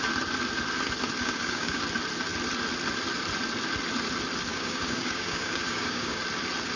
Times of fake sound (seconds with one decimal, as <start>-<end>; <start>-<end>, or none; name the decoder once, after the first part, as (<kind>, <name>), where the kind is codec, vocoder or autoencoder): 1.2-1.8 (codec, DAC); 4.5-6.2